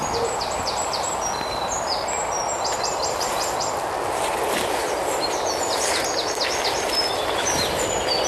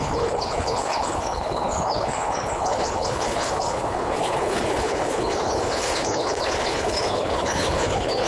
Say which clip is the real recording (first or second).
first